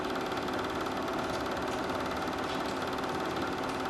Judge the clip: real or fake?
real